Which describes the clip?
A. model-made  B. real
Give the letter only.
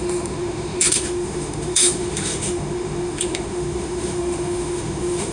A